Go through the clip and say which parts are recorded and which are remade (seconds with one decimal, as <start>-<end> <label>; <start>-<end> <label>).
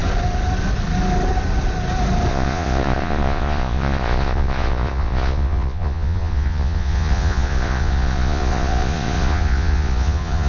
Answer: 0.0-2.3 recorded; 2.3-10.5 remade